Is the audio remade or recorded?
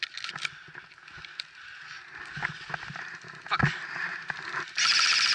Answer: recorded